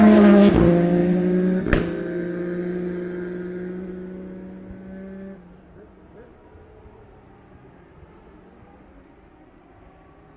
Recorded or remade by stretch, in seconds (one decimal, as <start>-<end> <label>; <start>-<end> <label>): 0.0-10.4 recorded